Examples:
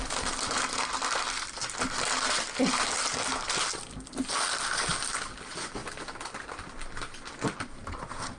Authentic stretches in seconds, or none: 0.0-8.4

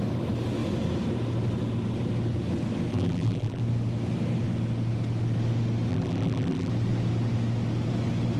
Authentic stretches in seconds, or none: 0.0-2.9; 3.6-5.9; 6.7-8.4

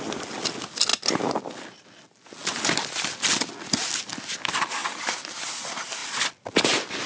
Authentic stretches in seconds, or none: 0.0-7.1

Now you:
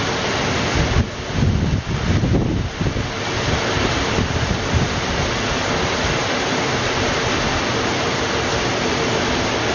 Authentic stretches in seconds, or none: 0.0-9.7

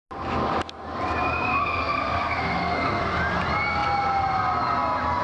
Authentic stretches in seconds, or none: 0.0-1.5; 3.0-5.2